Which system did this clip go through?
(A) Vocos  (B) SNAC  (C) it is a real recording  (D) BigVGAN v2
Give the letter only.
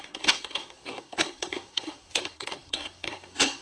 B